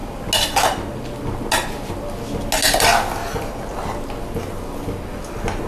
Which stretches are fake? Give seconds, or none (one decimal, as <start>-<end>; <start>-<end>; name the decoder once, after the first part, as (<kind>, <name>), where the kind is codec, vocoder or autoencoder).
none